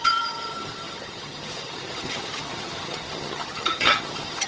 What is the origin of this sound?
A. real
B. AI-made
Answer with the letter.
B